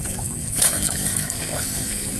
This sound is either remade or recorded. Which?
remade